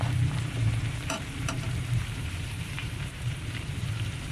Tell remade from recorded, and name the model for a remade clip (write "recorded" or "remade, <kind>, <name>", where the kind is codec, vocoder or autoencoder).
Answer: remade, vocoder, BigVGAN v2